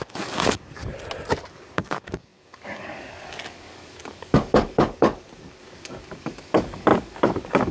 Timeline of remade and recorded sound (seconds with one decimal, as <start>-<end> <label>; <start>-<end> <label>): 0.0-0.8 remade; 0.8-1.5 recorded; 1.5-7.7 remade